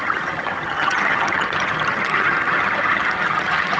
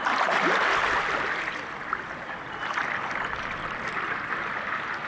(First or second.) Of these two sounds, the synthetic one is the first